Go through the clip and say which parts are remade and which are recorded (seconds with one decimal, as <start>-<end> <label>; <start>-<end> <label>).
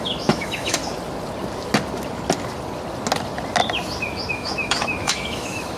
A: 0.0-0.8 remade; 0.8-4.3 recorded; 4.3-5.8 remade